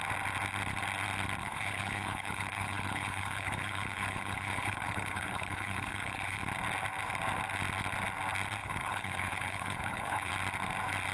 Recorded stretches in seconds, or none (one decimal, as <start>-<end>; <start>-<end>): 0.0-1.4; 6.4-8.6; 10.3-11.1